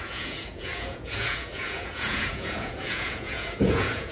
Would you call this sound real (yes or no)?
no